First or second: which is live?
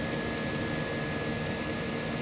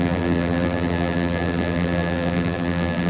first